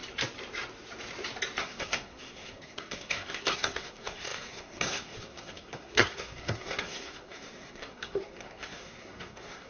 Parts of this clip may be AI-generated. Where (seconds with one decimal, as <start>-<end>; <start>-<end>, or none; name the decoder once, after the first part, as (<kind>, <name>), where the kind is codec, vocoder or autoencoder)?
1.6-9.7 (codec, SNAC)